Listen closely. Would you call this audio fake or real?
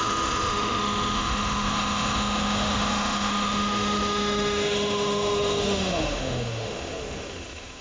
fake